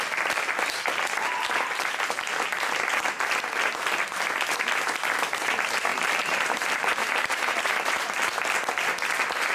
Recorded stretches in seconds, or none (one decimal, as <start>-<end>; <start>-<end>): 0.0-5.9; 8.1-9.5